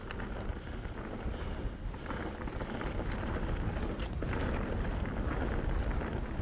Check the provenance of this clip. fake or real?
real